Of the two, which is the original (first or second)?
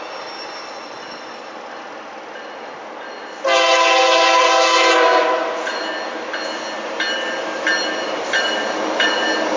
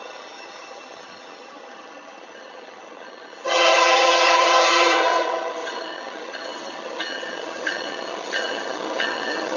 first